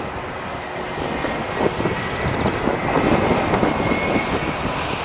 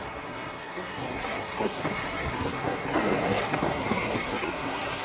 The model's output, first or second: second